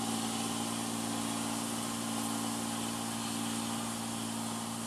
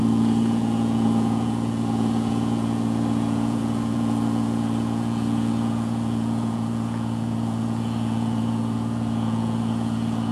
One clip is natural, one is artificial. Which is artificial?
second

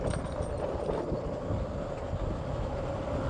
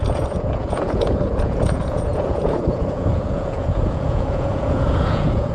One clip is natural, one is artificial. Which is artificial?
second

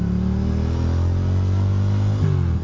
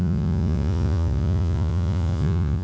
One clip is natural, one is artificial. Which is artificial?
second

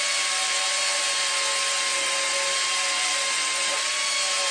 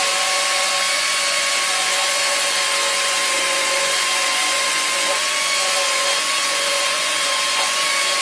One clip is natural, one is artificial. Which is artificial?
second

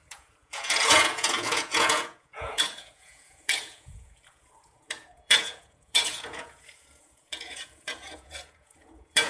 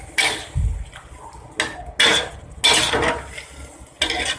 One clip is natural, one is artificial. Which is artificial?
first